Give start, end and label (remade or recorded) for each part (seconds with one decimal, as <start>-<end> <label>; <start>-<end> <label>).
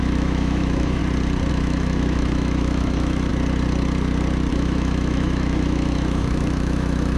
0.0-1.0 remade; 1.0-1.5 recorded; 1.5-3.3 remade; 3.3-4.5 recorded; 4.5-7.2 remade